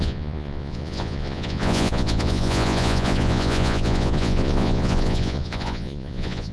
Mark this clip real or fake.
fake